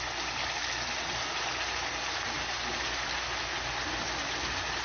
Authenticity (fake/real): real